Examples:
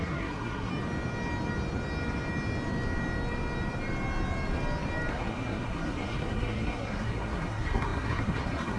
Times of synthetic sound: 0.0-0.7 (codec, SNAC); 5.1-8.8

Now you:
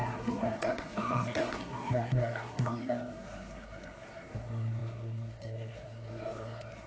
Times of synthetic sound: 0.0-6.9 (codec, SNAC)